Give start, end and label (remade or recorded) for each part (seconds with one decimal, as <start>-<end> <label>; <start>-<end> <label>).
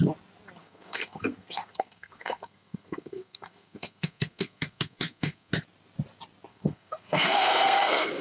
0.0-0.6 recorded; 0.6-5.5 remade; 5.5-6.5 recorded; 6.5-8.2 remade